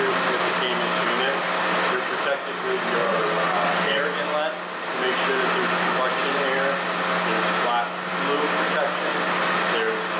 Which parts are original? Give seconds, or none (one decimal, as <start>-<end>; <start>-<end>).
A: 0.0-3.0; 4.0-10.2